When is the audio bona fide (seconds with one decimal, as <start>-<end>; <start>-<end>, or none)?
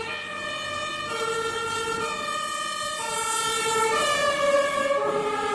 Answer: 0.0-5.5